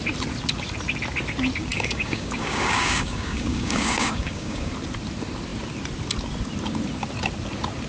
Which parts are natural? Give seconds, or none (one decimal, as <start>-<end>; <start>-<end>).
0.0-1.7; 4.7-7.9